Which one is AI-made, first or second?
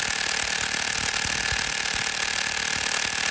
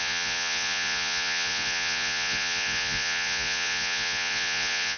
second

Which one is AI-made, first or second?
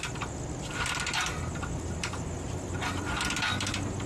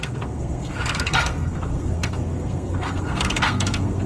second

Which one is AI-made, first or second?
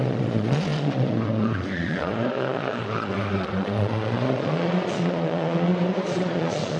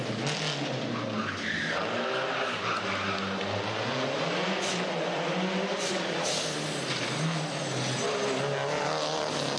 first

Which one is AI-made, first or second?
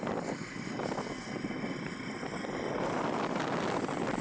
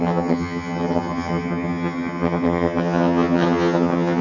second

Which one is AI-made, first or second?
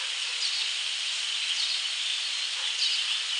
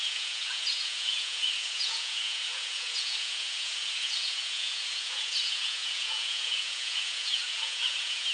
second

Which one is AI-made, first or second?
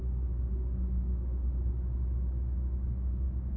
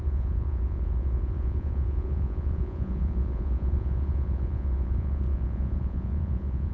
second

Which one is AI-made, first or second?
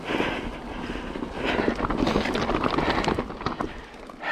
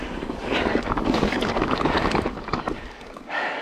second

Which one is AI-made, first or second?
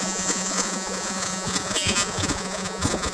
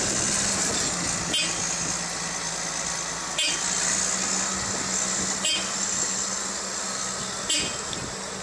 first